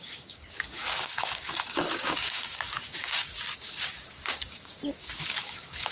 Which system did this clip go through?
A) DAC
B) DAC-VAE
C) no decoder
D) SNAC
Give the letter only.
A